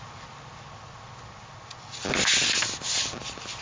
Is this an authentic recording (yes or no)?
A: yes